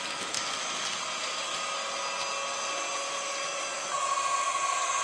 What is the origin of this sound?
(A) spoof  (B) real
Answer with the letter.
B